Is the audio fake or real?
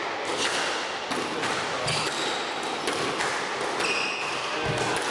real